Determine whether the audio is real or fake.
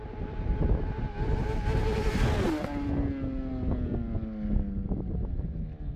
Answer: real